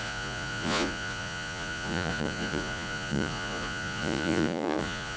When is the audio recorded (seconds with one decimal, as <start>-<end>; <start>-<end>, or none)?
none